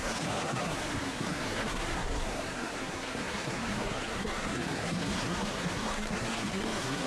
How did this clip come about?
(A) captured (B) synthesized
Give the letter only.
B